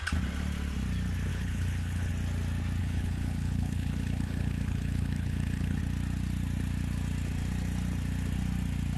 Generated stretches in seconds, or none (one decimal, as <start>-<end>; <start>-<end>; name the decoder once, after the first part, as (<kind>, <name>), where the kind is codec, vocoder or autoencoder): 1.3-2.1 (codec, HILCodec); 2.8-5.8